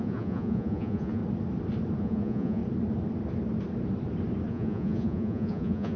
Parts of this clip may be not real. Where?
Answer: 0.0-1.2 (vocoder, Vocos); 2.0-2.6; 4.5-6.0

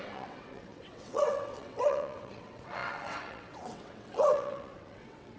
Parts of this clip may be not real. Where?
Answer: 0.0-5.4 (vocoder, WaveNeXt)

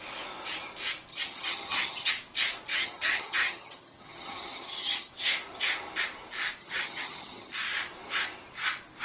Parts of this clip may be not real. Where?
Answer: 1.1-2.1 (vocoder, HiFi-GAN); 2.7-5.1; 6.6-7.5

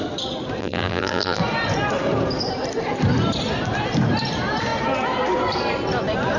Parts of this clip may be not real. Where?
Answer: 0.6-1.4 (vocoder, BigVGAN v2)

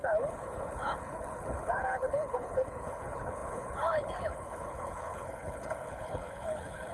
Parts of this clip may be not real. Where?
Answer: 0.0-6.9 (codec, HILCodec)

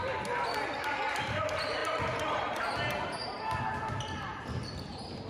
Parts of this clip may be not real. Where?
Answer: none

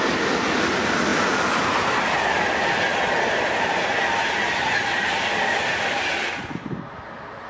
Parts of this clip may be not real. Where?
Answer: none

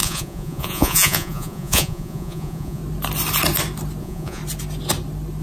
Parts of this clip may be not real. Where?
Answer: 0.0-2.8 (vocoder, Vocos); 4.0-4.4